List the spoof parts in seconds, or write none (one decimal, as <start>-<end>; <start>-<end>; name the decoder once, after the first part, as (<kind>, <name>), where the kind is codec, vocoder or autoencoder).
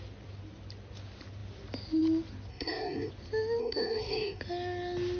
2.5-3.1 (codec, SNAC); 3.6-4.4